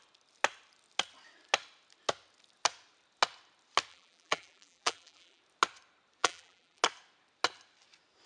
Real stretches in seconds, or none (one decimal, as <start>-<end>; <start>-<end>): 0.0-3.9; 5.4-6.2; 6.8-8.3